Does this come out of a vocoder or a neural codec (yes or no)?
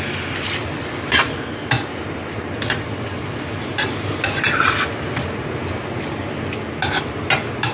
no